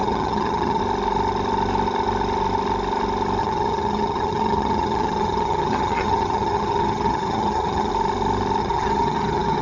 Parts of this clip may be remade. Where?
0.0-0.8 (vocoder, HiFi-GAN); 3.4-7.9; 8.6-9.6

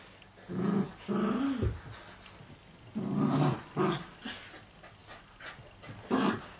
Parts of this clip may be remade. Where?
none

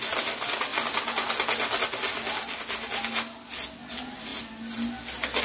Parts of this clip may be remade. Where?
none

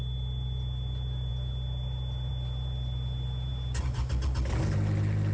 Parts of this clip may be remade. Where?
none

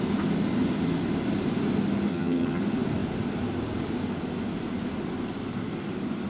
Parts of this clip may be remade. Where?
2.1-2.6 (vocoder, HiFi-GAN)

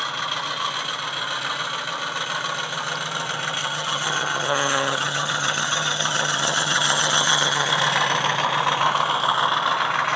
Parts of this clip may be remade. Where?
3.6-7.7 (vocoder, HiFi-GAN)

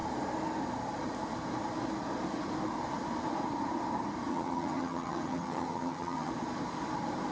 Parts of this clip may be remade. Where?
4.3-6.3 (vocoder, HiFi-GAN)

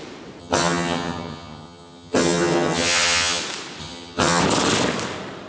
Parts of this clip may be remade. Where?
0.4-3.4 (vocoder, HiFi-GAN); 3.8-4.4